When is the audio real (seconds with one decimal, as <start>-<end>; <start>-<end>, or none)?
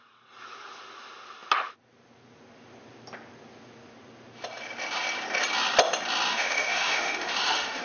0.0-6.3